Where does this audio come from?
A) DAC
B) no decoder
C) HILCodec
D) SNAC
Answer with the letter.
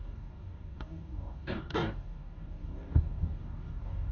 A